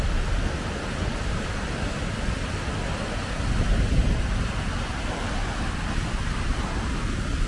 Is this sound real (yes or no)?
yes